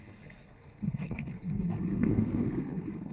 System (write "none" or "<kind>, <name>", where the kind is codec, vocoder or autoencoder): codec, SNAC